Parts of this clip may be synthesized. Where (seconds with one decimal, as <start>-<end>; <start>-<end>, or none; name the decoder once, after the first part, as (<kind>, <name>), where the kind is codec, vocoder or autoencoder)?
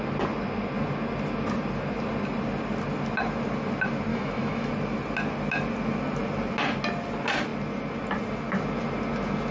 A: 4.1-4.7 (autoencoder, DAC-VAE)